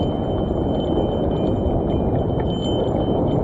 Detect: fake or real real